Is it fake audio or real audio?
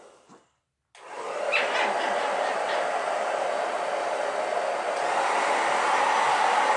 real